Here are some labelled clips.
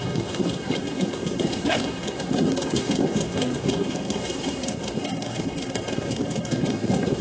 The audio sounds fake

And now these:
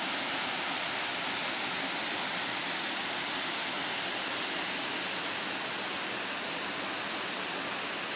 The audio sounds real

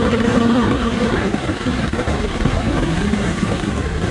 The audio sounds fake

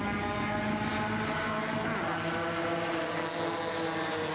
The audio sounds real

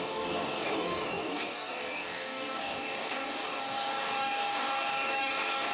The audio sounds fake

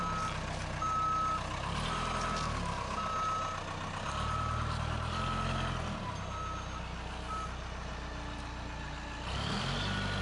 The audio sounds real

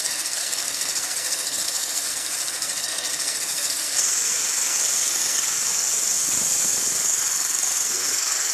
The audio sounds fake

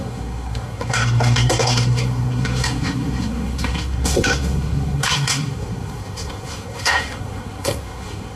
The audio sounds fake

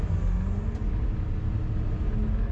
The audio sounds real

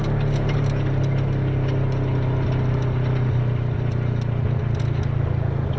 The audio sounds real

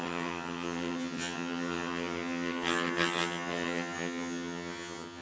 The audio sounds fake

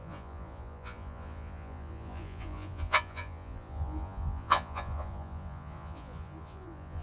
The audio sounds fake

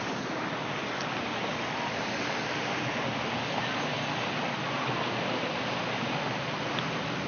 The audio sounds real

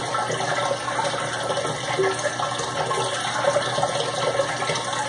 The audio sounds real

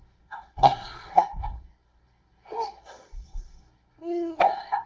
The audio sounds fake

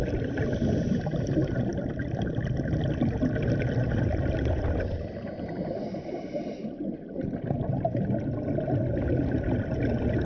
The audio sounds real